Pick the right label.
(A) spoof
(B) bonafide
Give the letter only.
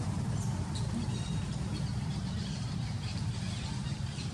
A